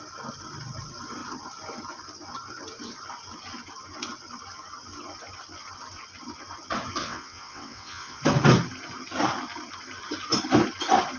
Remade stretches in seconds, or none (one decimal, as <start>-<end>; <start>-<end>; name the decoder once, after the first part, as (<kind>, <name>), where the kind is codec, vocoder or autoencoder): 7.0-8.2 (vocoder, WaveNeXt)